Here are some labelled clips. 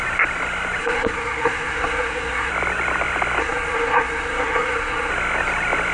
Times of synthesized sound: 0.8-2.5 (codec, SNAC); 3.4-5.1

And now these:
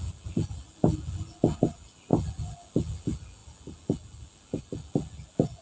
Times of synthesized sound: none